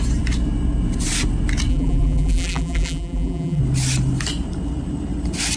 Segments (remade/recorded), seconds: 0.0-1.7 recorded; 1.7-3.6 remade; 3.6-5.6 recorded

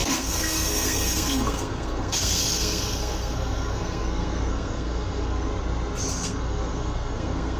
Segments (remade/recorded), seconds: 0.0-5.5 remade; 5.5-6.1 recorded; 6.1-7.6 remade

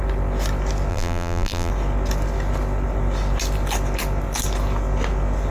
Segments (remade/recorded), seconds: 0.0-0.9 recorded; 0.9-1.7 remade; 1.7-5.5 recorded

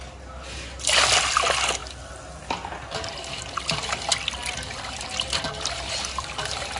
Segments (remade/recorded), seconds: 0.0-6.8 recorded